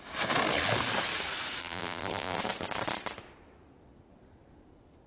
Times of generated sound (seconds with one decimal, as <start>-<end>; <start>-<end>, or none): 1.6-2.4